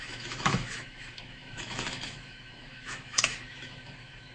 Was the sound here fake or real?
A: fake